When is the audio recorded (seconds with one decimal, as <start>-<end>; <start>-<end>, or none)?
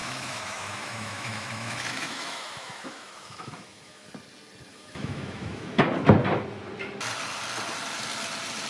4.1-4.7; 5.8-8.7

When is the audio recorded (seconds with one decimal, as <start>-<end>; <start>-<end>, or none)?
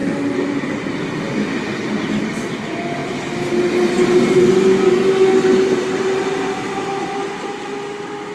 0.0-8.3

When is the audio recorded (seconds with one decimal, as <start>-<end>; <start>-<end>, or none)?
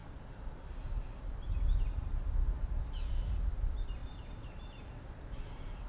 0.0-5.9